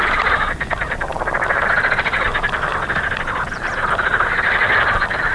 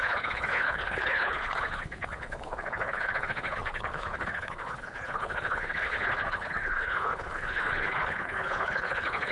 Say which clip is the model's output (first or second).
second